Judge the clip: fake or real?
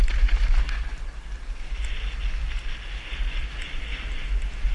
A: real